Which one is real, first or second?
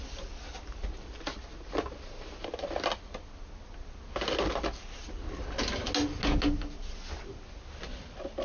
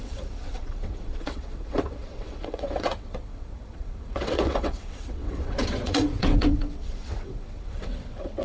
first